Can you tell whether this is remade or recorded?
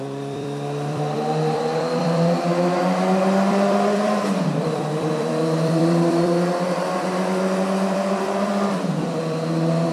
remade